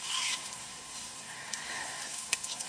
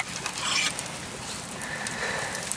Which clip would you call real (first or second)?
second